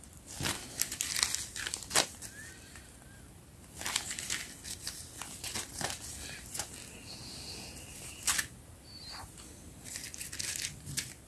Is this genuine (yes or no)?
yes